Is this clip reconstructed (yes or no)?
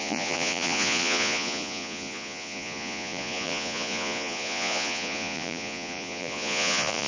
yes